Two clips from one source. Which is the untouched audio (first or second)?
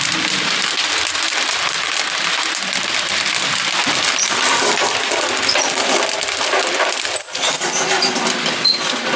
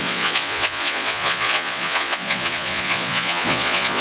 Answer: first